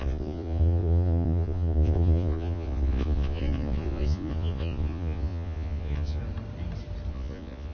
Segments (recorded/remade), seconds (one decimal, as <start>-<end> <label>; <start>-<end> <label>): 0.0-6.2 remade; 6.2-7.1 recorded; 7.1-7.7 remade